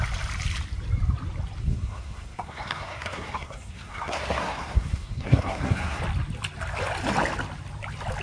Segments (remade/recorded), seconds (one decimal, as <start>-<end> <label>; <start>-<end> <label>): 0.0-1.6 recorded; 1.6-6.0 remade; 6.0-8.2 recorded